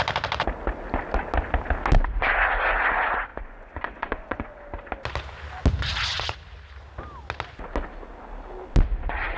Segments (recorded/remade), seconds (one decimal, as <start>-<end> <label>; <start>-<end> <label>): 0.0-3.3 recorded; 3.3-4.6 remade; 4.6-9.4 recorded